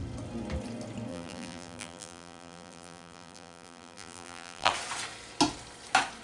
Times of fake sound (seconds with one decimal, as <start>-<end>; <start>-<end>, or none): 1.1-4.7